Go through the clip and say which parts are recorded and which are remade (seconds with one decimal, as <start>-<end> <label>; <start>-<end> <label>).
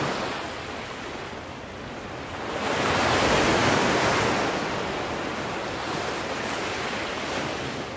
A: 0.0-8.0 recorded